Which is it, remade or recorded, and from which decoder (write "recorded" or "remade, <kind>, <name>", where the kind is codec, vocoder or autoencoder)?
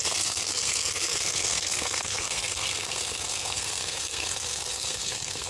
remade, codec, SNAC